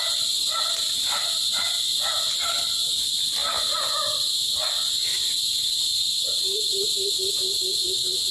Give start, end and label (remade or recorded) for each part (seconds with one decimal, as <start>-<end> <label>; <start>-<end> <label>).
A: 0.0-8.3 remade

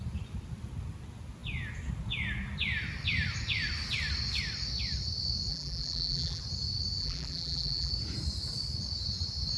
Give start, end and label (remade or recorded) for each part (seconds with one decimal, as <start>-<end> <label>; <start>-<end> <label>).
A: 0.0-5.5 recorded; 5.5-6.4 remade; 6.4-7.0 recorded; 7.0-7.9 remade; 7.9-9.6 recorded